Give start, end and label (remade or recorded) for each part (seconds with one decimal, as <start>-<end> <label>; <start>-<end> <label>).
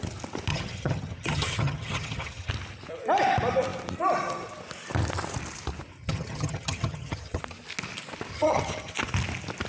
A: 0.0-0.5 recorded; 0.5-2.5 remade; 2.5-6.0 recorded; 6.0-7.4 remade; 7.4-8.3 recorded; 8.3-8.9 remade; 8.9-9.7 recorded